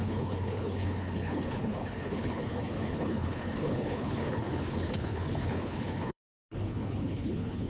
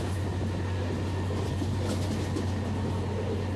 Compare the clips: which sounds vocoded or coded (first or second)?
first